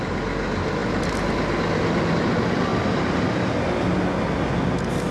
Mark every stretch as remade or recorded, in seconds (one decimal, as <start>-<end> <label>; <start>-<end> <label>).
0.0-5.1 recorded